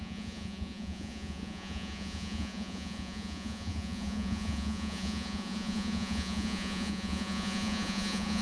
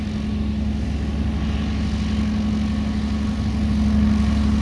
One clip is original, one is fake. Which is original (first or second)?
second